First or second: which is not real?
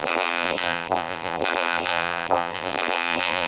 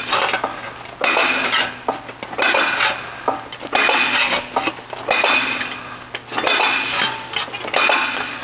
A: first